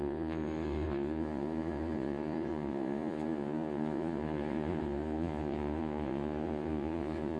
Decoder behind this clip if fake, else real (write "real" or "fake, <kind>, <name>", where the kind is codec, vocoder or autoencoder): fake, vocoder, Vocos